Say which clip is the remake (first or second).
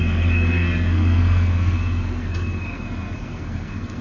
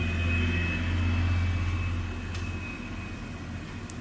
first